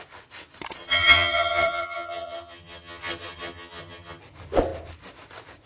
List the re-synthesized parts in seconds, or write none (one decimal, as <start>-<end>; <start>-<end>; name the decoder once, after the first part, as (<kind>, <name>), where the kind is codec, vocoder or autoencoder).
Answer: 0.8-4.2 (vocoder, HiFi-GAN)